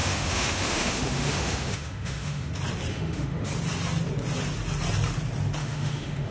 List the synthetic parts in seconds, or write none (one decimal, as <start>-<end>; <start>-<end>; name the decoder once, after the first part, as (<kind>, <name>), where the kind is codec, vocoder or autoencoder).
0.0-2.5 (autoencoder, DAC-VAE); 2.9-3.5; 5.6-6.3